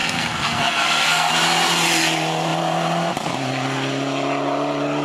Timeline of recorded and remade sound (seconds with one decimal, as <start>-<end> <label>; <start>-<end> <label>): 0.0-1.3 remade; 1.3-5.0 recorded